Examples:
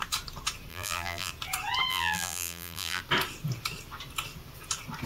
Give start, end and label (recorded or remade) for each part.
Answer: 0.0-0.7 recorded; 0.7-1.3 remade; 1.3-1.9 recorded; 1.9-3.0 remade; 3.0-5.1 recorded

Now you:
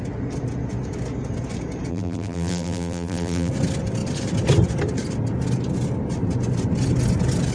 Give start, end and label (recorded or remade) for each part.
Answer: 0.0-1.9 recorded; 1.9-3.5 remade; 3.5-7.5 recorded

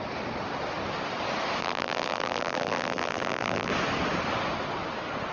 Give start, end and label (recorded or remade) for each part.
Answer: 0.0-1.6 recorded; 1.6-3.7 remade; 3.7-5.3 recorded

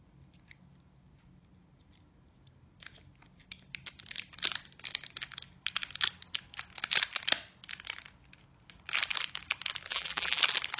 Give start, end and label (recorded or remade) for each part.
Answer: 0.0-9.9 recorded; 9.9-10.4 remade; 10.4-10.8 recorded

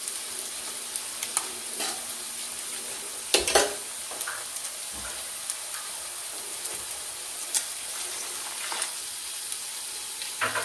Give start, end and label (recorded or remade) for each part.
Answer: 0.0-10.6 recorded

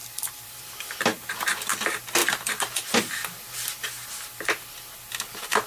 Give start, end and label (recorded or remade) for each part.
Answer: 0.0-0.6 remade; 0.6-5.7 recorded

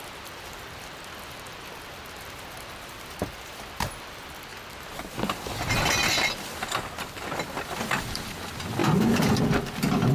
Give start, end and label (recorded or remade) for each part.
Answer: 0.0-4.5 remade; 4.5-8.0 recorded; 8.0-10.1 remade

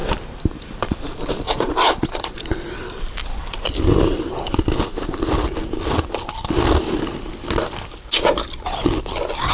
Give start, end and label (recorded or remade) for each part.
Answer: 0.0-3.4 remade; 3.4-9.5 recorded